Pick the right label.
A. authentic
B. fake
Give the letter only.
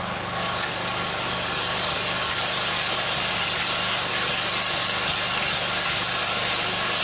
B